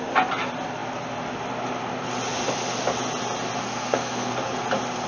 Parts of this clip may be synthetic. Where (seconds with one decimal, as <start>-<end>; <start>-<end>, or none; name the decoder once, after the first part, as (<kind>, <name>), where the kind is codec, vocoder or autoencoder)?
3.6-4.4 (codec, SNAC)